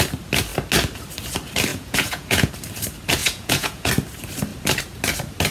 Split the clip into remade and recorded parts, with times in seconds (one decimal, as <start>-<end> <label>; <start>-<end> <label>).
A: 0.0-1.7 recorded; 1.7-2.5 remade; 2.5-3.2 recorded; 3.2-3.9 remade; 3.9-5.5 recorded